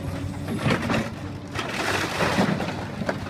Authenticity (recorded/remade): recorded